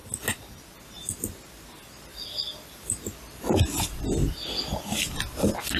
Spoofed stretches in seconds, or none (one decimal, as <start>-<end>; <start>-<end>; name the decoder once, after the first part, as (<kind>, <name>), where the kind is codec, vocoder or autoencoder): 0.0-0.6 (vocoder, BigVGAN v2); 2.1-5.8